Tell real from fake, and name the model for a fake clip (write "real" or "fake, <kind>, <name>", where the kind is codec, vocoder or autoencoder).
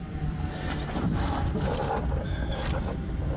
real